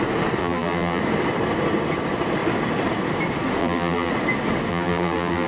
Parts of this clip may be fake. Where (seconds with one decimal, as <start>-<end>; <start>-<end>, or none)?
0.4-1.0; 3.6-4.1; 4.7-5.5